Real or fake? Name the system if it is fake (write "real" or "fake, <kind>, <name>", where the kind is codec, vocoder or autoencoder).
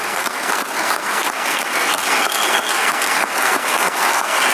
fake, codec, SNAC